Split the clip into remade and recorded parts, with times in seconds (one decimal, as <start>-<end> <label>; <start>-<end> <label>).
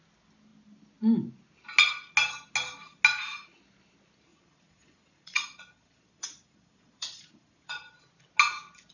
0.0-4.3 recorded; 4.3-8.0 remade; 8.0-8.9 recorded